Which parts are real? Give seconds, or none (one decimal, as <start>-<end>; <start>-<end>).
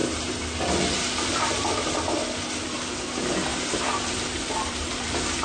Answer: 0.0-3.5